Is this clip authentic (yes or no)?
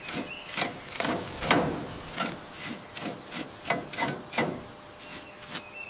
yes